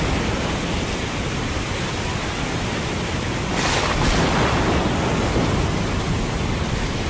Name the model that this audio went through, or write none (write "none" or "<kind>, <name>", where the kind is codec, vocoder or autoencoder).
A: none